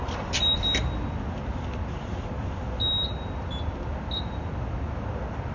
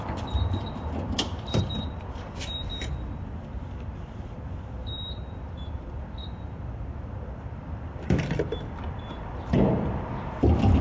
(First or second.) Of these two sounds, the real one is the first